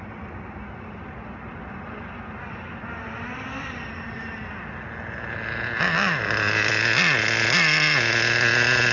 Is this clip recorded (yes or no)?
yes